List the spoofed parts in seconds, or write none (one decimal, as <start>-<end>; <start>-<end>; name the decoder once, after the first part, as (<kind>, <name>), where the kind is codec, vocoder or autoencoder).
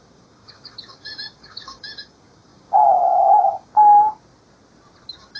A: 0.0-3.7 (codec, DAC)